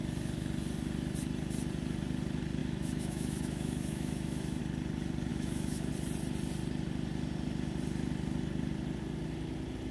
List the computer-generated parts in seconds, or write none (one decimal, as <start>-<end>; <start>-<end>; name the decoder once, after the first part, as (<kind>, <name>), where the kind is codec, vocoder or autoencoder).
2.6-4.6 (autoencoder, DAC-VAE); 5.3-5.9